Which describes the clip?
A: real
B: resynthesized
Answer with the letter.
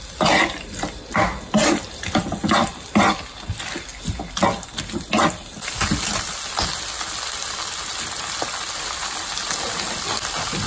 A